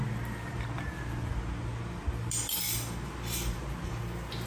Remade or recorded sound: recorded